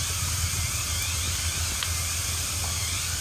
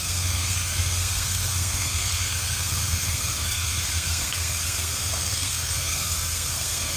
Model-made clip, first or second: second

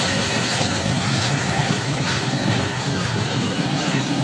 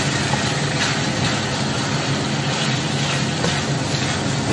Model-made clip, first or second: first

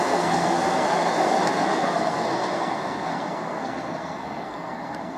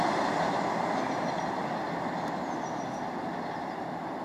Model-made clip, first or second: first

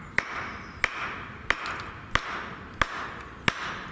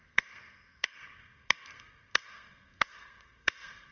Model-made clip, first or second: second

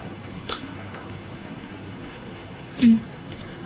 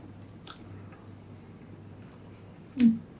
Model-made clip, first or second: first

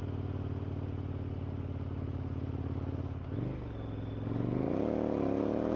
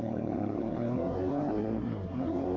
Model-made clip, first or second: second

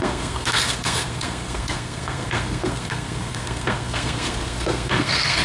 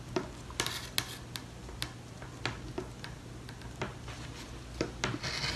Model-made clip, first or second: first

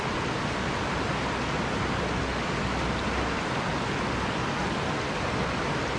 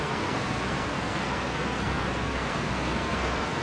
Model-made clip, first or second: second